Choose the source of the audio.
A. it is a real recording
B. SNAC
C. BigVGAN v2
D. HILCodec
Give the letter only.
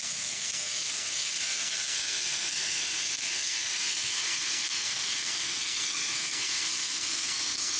B